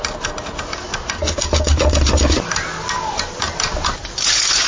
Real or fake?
real